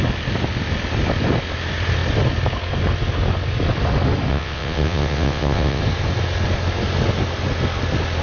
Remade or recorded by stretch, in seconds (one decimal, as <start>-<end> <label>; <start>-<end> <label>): 0.0-4.3 recorded; 4.3-5.8 remade; 5.8-8.2 recorded